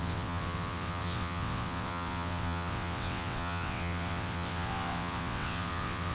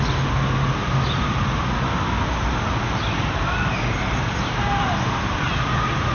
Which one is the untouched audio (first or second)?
second